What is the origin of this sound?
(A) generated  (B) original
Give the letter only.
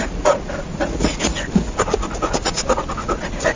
A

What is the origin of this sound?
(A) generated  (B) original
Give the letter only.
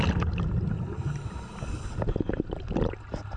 B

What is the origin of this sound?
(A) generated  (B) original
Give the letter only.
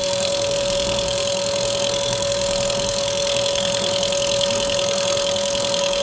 A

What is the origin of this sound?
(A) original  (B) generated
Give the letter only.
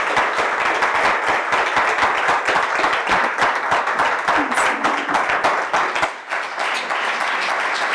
A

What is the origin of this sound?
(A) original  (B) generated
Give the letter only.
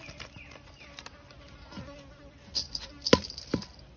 A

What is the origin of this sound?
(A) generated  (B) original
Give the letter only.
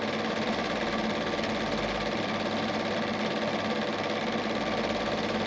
B